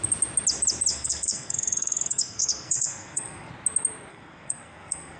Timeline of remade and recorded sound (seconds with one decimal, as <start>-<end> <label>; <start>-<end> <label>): 0.0-0.9 recorded; 0.9-3.5 remade; 3.5-4.1 recorded; 4.1-5.2 remade

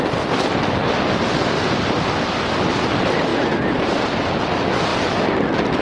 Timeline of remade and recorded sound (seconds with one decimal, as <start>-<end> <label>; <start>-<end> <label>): 0.0-5.8 recorded